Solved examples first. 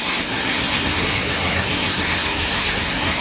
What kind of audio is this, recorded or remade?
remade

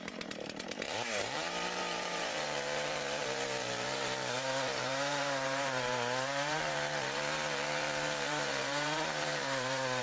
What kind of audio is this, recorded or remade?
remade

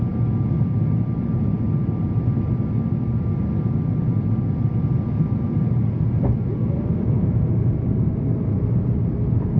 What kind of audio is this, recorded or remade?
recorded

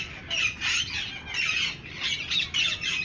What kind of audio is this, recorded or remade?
recorded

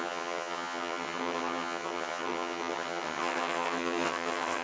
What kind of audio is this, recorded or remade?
remade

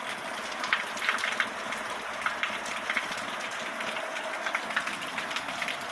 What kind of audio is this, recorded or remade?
recorded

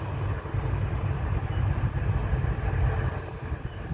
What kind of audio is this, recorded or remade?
recorded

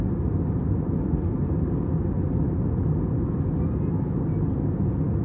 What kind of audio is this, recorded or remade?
recorded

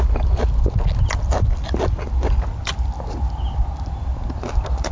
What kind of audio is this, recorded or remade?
recorded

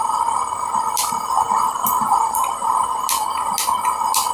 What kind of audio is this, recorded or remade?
recorded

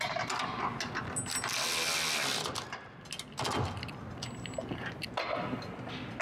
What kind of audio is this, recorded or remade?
recorded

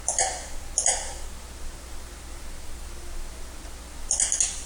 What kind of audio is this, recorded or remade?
recorded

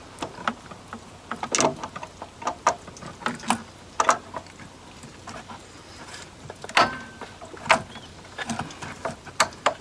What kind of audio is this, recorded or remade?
recorded